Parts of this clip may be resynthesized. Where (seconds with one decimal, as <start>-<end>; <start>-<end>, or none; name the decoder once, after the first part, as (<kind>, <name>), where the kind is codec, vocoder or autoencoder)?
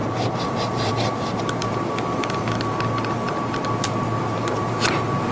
0.0-0.9 (vocoder, BigVGAN v2); 4.3-4.8